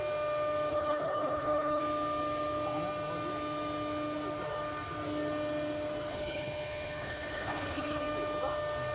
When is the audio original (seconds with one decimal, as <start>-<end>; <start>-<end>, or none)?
0.0-0.7; 1.8-6.1; 8.0-8.9